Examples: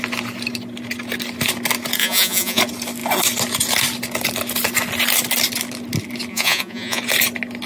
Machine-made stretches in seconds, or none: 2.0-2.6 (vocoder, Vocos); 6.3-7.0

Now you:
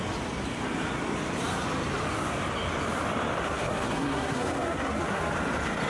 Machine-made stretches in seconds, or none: 3.4-5.3 (codec, SNAC)

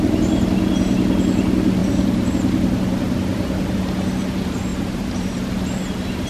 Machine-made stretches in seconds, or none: 1.8-2.3 (vocoder, BigVGAN v2); 4.7-5.4

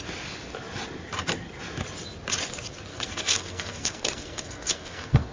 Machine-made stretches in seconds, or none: 2.9-5.3 (codec, SNAC)

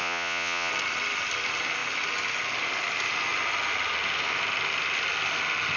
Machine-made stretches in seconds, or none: 0.0-0.7 (vocoder, Vocos)

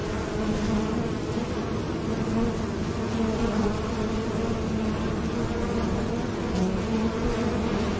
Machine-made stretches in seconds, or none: none

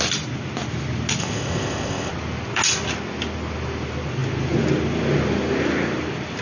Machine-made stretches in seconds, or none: 1.2-2.1 (codec, ZipCodec)

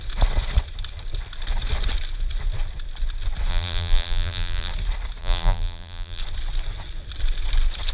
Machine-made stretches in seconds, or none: 3.5-4.7 (vocoder, BigVGAN v2); 5.2-6.2